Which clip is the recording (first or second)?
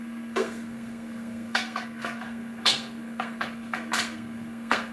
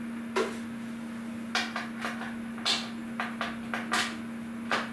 second